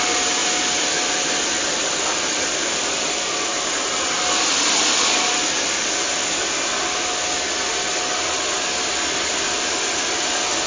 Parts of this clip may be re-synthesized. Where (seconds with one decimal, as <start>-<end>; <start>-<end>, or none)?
none